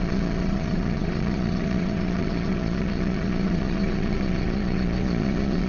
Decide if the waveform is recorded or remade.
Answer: remade